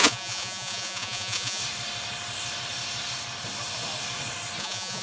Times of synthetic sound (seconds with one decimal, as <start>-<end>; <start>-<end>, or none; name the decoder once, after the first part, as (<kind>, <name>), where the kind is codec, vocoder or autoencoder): 0.0-1.6 (vocoder, Vocos); 4.6-5.0